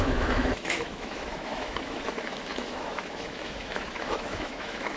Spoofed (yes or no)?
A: yes